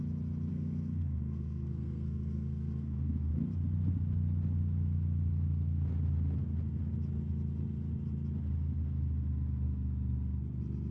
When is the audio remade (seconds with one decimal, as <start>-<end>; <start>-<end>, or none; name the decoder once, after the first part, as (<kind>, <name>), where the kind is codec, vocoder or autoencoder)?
0.5-3.3 (codec, SNAC)